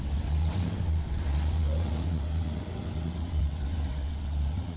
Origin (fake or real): fake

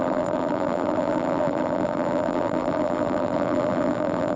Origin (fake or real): fake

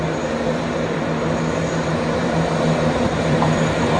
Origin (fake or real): fake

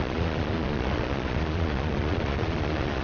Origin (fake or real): fake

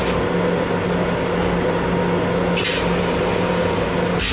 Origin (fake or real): real